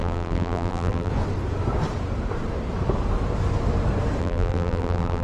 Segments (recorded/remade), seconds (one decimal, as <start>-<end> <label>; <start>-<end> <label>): 0.0-1.1 remade; 1.1-4.2 recorded; 4.2-5.2 remade